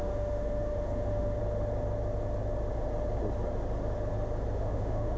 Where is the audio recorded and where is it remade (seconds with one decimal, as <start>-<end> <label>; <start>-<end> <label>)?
0.0-1.4 remade; 1.4-4.5 recorded; 4.5-5.2 remade